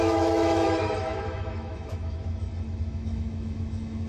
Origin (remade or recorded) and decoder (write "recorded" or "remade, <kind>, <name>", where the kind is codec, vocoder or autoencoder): remade, autoencoder, DAC-VAE